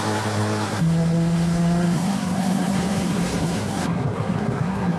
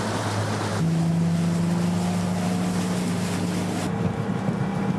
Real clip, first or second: second